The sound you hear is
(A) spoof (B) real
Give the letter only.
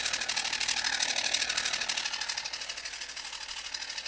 B